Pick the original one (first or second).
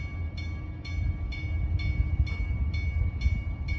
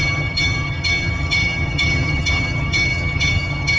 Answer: first